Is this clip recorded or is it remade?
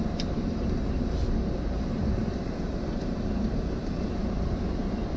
remade